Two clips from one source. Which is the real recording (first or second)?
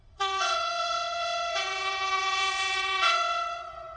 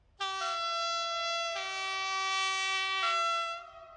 second